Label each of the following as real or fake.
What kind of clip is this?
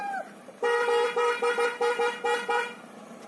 fake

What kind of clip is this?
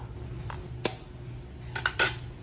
real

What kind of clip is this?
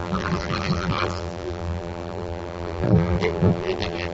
fake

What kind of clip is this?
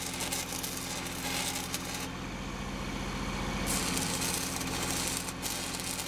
real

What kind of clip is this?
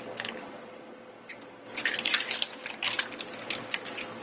real